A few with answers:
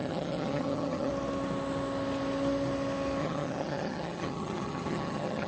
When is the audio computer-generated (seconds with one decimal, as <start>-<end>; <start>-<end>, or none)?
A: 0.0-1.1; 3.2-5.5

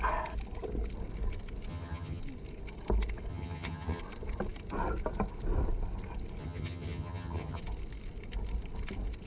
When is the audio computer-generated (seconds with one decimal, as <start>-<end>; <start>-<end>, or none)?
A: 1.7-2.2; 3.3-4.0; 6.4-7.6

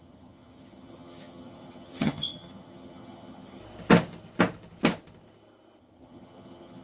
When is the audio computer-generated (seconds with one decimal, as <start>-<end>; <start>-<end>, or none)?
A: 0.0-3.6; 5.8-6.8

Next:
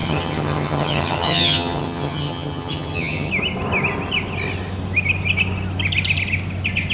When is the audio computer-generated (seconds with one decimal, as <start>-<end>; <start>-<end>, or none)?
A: 0.0-3.3

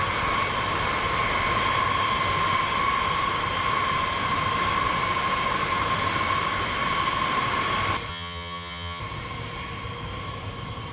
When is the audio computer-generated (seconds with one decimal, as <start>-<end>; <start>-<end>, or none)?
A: 8.1-9.0